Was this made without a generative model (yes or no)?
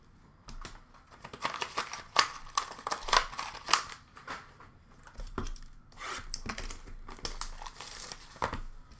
yes